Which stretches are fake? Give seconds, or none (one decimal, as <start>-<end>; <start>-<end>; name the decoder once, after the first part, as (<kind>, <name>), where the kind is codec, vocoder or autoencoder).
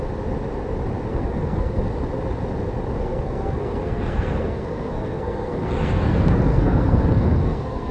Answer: 1.1-1.8 (codec, SNAC); 3.0-7.9